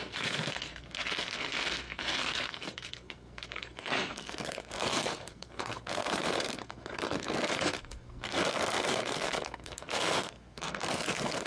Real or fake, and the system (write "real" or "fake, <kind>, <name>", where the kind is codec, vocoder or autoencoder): fake, codec, SNAC